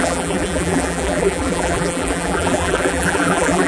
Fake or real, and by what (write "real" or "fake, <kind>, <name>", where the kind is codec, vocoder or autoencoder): fake, vocoder, BigVGAN v2